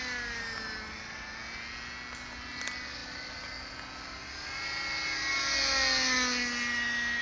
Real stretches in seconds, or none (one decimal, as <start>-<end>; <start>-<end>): 0.0-7.2